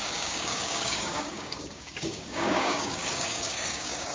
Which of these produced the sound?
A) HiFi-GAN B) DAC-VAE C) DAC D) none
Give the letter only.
C